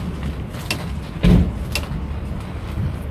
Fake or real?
real